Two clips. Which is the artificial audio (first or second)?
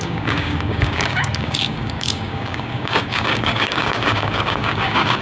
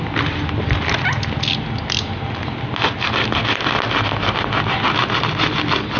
first